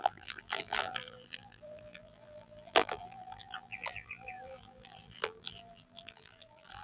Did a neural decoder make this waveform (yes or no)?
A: yes